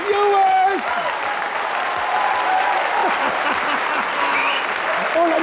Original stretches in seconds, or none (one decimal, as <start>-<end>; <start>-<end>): 0.0-5.4